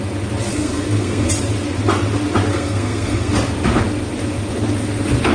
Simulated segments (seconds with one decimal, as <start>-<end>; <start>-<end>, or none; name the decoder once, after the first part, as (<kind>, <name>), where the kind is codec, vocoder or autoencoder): 0.5-1.3 (codec, SNAC); 2.5-3.3